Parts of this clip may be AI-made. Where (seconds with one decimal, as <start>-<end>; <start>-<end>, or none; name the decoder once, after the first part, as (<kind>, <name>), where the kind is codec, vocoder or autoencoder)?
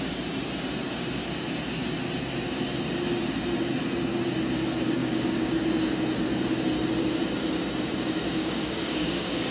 5.0-5.5 (codec, DAC); 8.4-9.5